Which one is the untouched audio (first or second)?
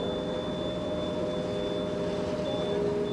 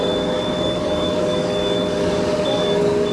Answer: first